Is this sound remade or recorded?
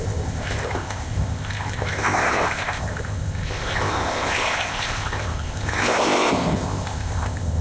remade